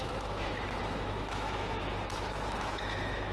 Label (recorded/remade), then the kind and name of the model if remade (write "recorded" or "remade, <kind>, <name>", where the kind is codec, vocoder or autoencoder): remade, autoencoder, DAC-VAE